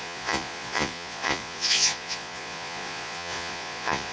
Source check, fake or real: fake